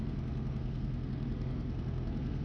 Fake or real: fake